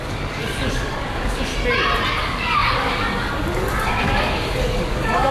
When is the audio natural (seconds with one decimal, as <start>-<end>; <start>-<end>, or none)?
1.5-2.1